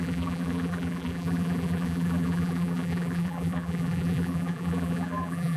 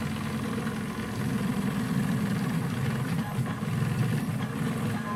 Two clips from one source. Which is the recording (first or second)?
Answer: second